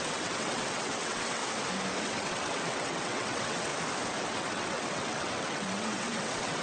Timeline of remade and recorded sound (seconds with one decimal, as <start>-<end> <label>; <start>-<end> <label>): 0.0-1.4 remade; 1.4-2.0 recorded; 2.0-3.7 remade; 3.7-4.2 recorded; 4.2-6.6 remade